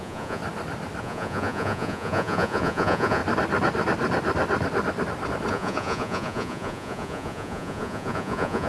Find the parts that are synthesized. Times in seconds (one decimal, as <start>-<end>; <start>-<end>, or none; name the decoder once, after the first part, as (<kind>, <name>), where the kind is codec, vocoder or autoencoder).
0.0-0.4 (vocoder, Vocos); 1.0-3.2; 5.5-8.7

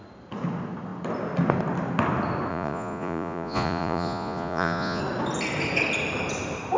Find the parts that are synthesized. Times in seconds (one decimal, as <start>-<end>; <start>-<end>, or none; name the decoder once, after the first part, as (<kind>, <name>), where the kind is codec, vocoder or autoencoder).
2.5-5.0 (vocoder, Vocos)

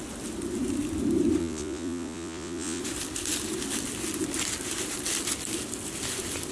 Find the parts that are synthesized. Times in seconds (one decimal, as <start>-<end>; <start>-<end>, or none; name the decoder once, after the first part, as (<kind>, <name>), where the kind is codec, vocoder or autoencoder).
1.4-2.8 (vocoder, Vocos)

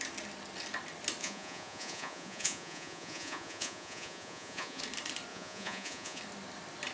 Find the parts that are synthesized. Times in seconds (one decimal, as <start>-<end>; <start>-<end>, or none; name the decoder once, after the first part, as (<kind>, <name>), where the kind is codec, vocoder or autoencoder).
1.2-4.8 (vocoder, Vocos); 5.3-6.2

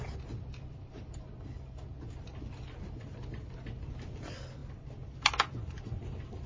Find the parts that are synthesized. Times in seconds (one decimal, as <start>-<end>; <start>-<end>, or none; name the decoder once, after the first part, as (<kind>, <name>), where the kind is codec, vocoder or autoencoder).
none